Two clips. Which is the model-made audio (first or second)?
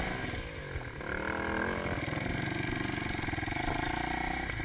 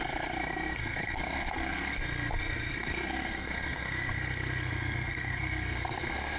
second